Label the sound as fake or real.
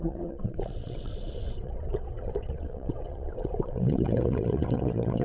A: fake